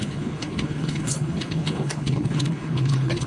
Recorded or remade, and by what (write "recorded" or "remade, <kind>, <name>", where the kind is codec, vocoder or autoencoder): remade, codec, HILCodec